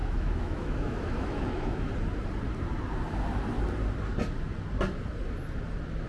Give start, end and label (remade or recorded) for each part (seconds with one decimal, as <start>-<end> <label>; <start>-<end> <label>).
0.0-1.9 remade; 1.9-6.1 recorded